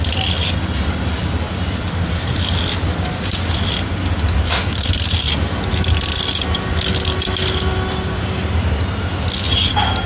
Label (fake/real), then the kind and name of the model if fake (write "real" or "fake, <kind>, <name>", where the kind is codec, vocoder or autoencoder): real